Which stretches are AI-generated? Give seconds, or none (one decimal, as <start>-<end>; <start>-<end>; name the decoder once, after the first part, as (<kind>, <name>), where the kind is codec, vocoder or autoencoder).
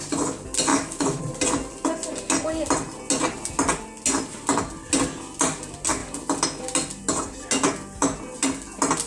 0.7-1.2 (autoencoder, DAC-VAE)